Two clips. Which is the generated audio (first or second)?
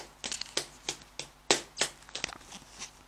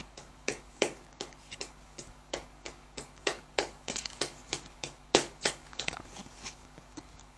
second